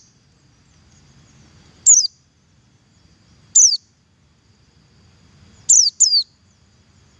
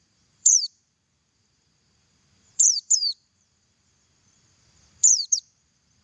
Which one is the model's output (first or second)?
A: second